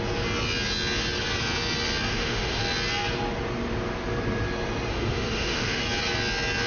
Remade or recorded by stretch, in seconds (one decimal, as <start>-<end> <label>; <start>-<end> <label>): 0.0-2.1 recorded; 2.1-2.6 remade; 2.6-4.9 recorded; 4.9-5.8 remade; 5.8-6.7 recorded